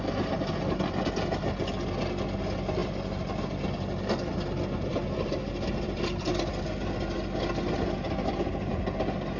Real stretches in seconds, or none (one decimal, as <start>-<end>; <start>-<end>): 0.0-4.9; 6.3-9.4